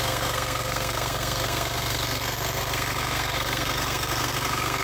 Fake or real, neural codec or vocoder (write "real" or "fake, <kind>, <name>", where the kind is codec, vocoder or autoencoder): fake, codec, SNAC